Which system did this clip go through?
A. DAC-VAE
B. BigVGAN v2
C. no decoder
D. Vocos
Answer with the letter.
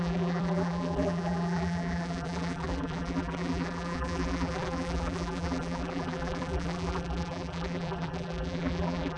B